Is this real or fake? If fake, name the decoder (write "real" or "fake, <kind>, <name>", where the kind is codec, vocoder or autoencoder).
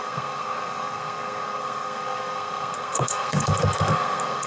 fake, codec, SNAC